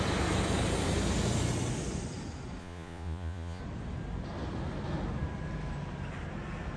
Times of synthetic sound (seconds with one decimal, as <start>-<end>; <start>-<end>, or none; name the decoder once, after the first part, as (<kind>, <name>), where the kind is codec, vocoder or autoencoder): 2.6-3.6 (vocoder, Vocos)